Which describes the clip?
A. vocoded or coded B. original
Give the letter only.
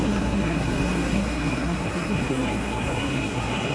A